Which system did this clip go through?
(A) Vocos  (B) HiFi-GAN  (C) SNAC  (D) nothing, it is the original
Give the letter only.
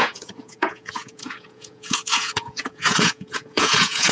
A